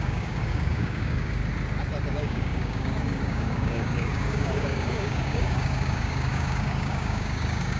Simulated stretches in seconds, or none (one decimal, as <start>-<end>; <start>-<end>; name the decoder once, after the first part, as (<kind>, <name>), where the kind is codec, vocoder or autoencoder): 0.0-1.4 (codec, DAC); 2.1-7.8